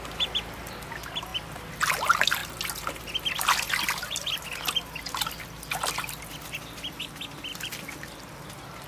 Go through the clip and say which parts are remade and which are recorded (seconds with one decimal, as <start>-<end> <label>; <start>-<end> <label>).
0.0-8.9 recorded

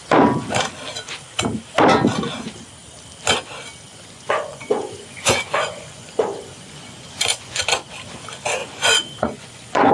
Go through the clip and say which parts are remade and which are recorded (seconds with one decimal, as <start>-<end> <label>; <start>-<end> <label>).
0.0-3.9 recorded; 3.9-7.6 remade; 7.6-8.6 recorded; 8.6-9.9 remade